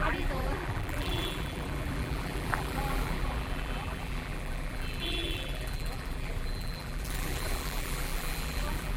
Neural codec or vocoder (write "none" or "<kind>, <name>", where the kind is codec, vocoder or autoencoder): vocoder, BigVGAN v2